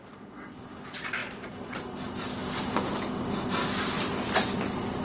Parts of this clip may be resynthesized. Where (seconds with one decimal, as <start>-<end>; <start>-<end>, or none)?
none